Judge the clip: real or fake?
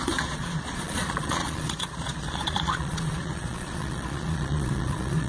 fake